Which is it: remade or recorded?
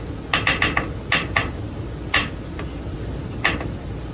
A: recorded